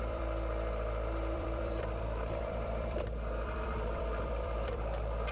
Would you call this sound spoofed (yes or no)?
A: yes